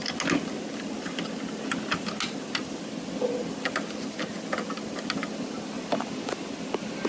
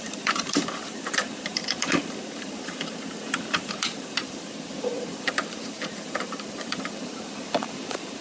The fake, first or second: second